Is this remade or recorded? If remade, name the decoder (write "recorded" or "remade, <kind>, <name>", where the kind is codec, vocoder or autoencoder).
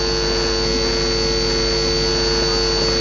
recorded